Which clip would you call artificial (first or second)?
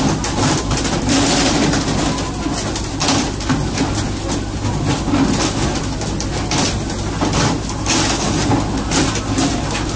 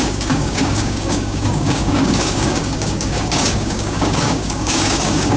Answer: second